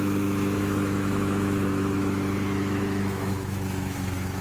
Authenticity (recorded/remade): remade